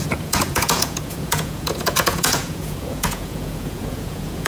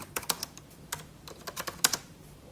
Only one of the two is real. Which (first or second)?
second